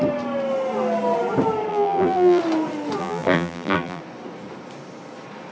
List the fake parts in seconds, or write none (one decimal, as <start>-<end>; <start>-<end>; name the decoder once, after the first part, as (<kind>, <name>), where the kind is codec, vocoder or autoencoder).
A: 1.7-2.4 (vocoder, BigVGAN v2); 3.0-4.0